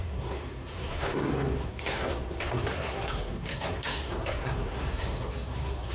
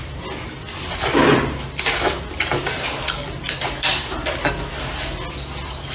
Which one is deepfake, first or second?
first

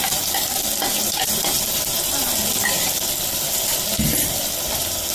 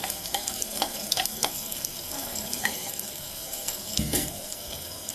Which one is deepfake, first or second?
second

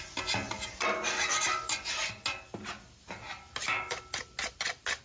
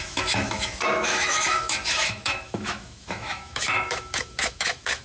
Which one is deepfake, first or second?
second